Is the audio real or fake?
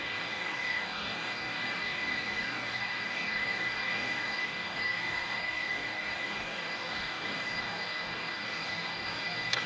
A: fake